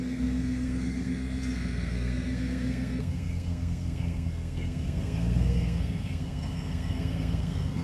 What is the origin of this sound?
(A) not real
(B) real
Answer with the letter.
A